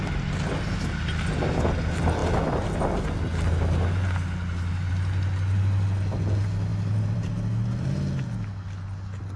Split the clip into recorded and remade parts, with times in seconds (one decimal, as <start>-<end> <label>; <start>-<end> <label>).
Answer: 0.0-6.7 recorded; 6.7-7.3 remade; 7.3-9.4 recorded